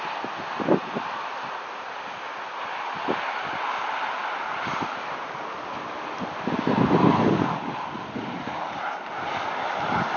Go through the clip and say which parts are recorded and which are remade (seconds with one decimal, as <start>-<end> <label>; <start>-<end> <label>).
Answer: 0.0-10.2 recorded